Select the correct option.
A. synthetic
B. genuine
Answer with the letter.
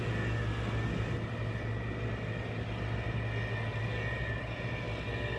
B